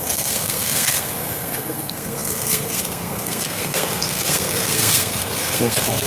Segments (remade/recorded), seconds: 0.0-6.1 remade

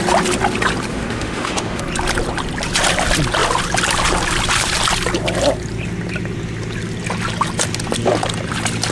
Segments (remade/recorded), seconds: 0.0-0.9 recorded; 0.9-1.8 remade; 1.8-8.9 recorded

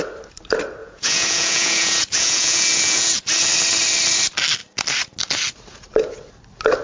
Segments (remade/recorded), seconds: 0.0-0.8 recorded; 0.8-3.2 remade; 3.2-6.8 recorded

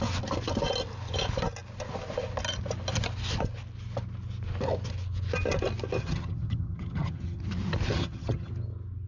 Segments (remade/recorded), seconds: 0.0-6.0 recorded; 6.0-7.4 remade; 7.4-7.9 recorded; 7.9-8.5 remade; 8.5-9.1 recorded

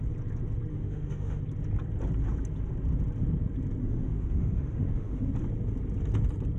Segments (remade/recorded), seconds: 0.0-0.7 recorded; 0.7-1.4 remade; 1.4-3.8 recorded; 3.8-5.3 remade; 5.3-6.6 recorded

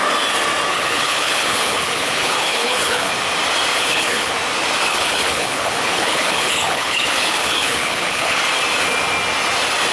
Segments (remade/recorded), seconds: 0.0-0.7 recorded; 0.7-3.1 remade; 3.1-3.7 recorded; 3.7-4.3 remade; 4.3-4.9 recorded; 4.9-8.4 remade; 8.4-9.9 recorded

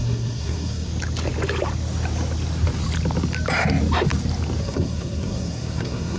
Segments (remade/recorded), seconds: 0.0-0.9 remade; 0.9-4.6 recorded; 4.6-6.2 remade